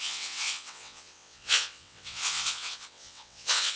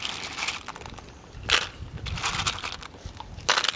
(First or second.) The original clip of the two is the second